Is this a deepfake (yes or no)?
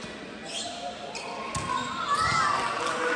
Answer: no